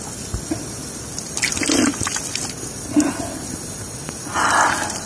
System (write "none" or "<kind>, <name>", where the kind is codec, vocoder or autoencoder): none